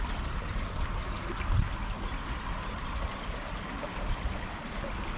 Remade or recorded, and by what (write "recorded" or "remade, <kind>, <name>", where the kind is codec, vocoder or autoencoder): recorded